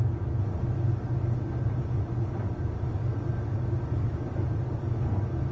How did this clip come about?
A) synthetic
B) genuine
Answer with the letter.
B